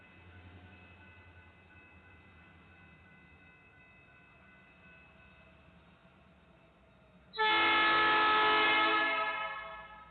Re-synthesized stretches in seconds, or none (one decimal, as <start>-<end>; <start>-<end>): none